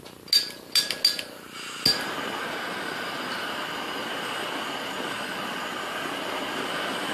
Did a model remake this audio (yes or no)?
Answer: no